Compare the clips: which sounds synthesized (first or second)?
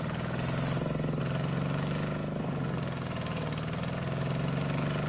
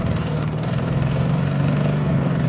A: second